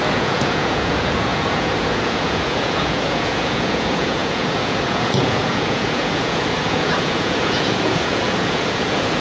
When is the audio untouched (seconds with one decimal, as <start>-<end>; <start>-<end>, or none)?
none